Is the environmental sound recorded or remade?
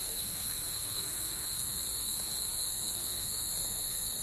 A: remade